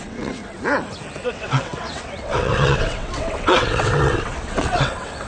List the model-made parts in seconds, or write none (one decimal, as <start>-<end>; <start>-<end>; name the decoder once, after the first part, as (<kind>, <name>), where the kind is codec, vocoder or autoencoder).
0.0-0.4 (vocoder, WaveNeXt); 1.2-5.3